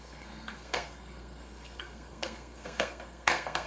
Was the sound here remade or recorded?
remade